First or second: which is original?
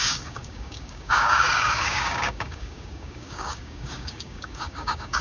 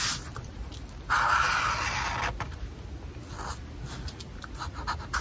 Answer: second